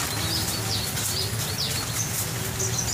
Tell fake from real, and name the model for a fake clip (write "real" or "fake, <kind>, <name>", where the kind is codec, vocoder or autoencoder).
real